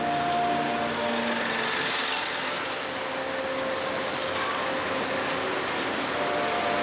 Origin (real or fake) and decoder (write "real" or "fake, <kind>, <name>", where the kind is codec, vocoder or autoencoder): real